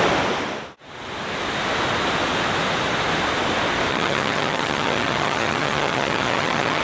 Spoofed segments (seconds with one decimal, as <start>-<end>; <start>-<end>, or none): 3.9-6.8

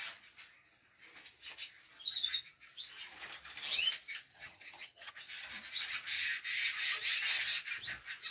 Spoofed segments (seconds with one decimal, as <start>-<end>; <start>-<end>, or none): 4.3-5.1

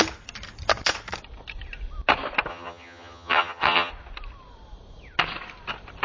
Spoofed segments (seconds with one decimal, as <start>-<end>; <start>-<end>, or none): 2.5-3.9